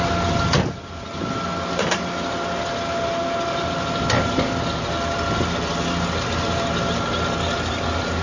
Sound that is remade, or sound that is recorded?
recorded